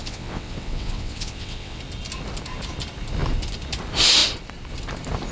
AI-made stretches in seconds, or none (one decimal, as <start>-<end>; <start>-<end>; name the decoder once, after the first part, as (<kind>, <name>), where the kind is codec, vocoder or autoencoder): 0.0-1.8 (vocoder, WaveNeXt)